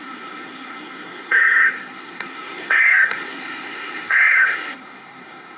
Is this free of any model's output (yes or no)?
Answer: no